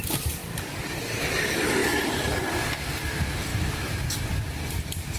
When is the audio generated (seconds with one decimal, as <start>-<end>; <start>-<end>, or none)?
none